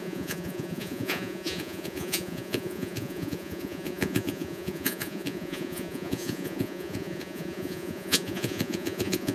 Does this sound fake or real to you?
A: fake